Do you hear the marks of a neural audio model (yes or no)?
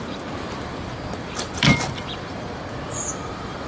yes